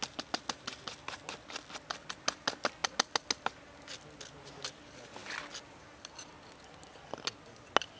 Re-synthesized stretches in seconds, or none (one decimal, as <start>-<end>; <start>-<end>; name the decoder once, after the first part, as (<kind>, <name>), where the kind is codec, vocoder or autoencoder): none